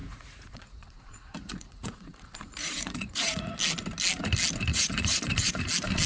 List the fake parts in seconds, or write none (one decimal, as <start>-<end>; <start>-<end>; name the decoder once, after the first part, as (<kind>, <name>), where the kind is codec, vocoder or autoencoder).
0.0-3.6 (vocoder, Vocos); 4.7-5.6